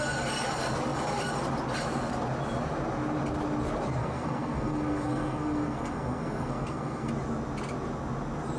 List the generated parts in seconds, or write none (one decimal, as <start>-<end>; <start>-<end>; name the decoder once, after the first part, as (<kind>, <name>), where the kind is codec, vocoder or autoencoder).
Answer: 4.0-7.1 (codec, SNAC)